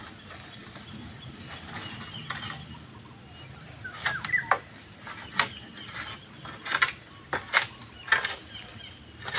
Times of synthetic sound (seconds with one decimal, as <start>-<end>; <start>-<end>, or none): none